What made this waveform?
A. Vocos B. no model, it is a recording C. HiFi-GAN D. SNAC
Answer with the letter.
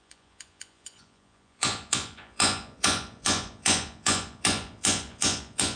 A